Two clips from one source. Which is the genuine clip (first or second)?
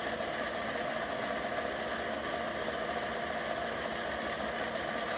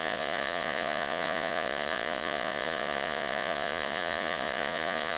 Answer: first